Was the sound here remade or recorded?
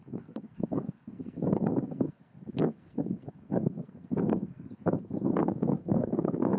remade